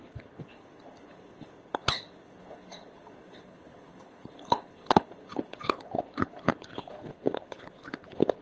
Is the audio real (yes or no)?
no